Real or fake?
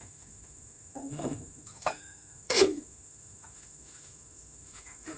fake